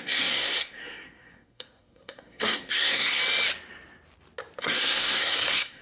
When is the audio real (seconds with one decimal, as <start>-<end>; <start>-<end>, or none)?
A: 3.2-4.6